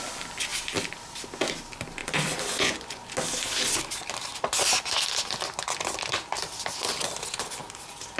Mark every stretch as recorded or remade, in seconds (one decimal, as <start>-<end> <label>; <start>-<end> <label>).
0.0-2.0 recorded; 2.0-3.1 remade; 3.1-8.2 recorded

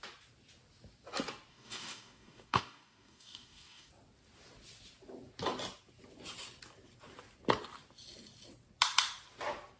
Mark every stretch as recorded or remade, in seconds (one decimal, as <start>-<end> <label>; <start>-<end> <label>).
0.0-1.5 recorded; 1.5-3.9 remade; 3.9-9.8 recorded